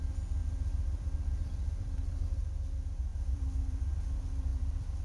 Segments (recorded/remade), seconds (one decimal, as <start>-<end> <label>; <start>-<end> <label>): 0.0-0.4 recorded; 0.4-2.4 remade; 2.4-3.1 recorded; 3.1-3.9 remade; 3.9-4.5 recorded; 4.5-5.0 remade